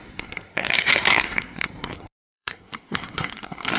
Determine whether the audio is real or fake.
fake